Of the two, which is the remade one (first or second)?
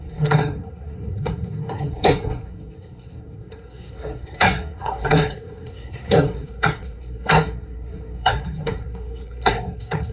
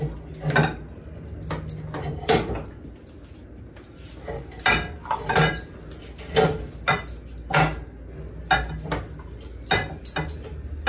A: first